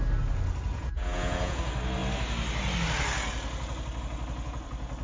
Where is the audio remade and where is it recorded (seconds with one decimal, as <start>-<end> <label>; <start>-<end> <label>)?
0.0-0.7 recorded; 0.7-1.6 remade; 1.6-5.0 recorded